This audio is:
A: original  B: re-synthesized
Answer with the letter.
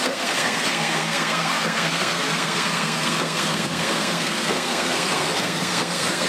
B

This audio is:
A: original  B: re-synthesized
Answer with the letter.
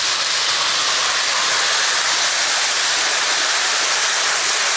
A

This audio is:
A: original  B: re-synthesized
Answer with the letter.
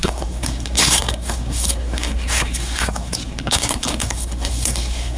B